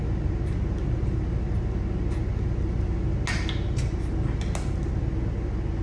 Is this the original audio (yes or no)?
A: yes